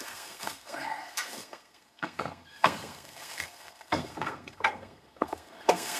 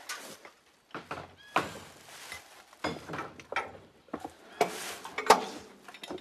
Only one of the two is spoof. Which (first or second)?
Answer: first